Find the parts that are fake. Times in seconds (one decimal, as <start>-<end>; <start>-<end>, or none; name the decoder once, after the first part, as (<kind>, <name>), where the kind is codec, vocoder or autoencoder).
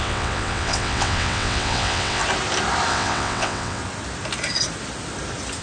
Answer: 0.0-2.2 (vocoder, WaveNeXt); 2.9-3.8